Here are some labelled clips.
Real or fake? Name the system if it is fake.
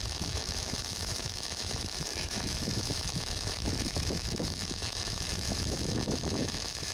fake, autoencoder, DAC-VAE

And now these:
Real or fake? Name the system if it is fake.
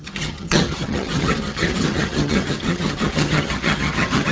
fake, vocoder, HiFi-GAN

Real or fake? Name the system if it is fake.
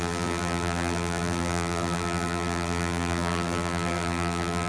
fake, vocoder, BigVGAN v2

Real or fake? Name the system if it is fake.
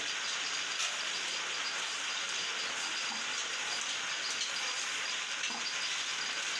fake, vocoder, BigVGAN v2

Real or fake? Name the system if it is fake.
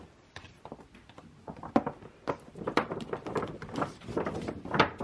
real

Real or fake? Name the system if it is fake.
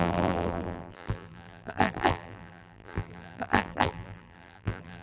fake, vocoder, BigVGAN v2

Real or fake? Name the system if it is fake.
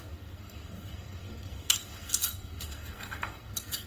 fake, codec, SNAC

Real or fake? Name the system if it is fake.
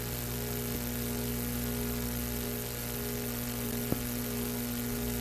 real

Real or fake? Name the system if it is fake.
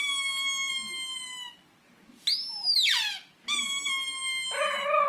real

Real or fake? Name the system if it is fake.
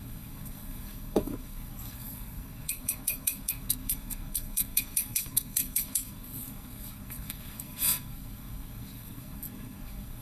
fake, codec, SNAC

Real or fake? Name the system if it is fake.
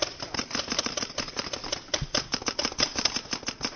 real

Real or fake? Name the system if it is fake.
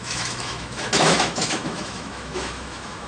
fake, autoencoder, DAC-VAE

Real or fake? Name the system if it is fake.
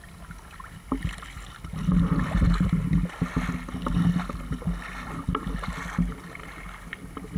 real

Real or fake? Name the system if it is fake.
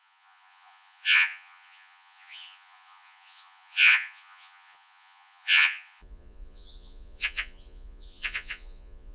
fake, vocoder, Vocos